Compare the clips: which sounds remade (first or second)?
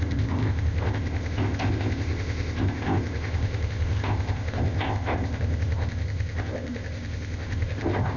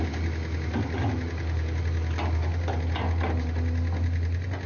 first